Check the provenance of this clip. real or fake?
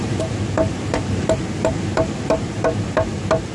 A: real